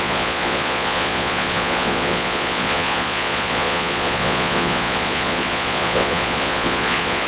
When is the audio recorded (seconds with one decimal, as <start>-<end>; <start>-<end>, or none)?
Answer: none

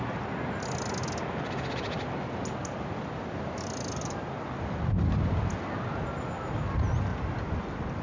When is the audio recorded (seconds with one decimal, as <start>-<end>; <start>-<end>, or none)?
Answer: 0.0-8.0